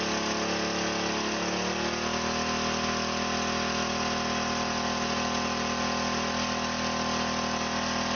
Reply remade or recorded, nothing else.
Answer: recorded